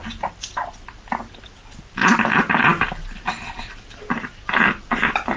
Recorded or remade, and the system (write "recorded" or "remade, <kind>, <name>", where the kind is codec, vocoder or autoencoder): recorded